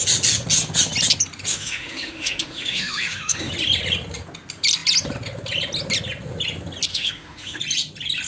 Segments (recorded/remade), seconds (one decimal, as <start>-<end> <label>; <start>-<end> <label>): 0.0-1.5 recorded; 1.5-3.5 remade; 3.5-6.9 recorded; 6.9-7.6 remade; 7.6-8.3 recorded